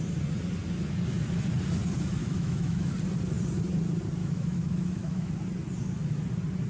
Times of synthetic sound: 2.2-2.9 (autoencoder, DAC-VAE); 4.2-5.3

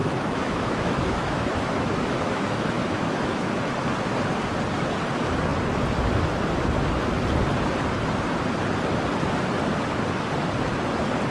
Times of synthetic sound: 0.0-3.5 (autoencoder, DAC-VAE)